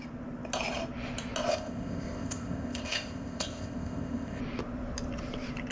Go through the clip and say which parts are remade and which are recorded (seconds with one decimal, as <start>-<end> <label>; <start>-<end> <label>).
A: 0.0-1.5 recorded; 1.5-4.4 remade; 4.4-5.7 recorded